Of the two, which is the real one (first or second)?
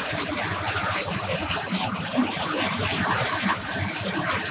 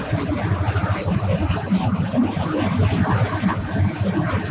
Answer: second